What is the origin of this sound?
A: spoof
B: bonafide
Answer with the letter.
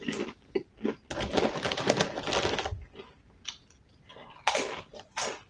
B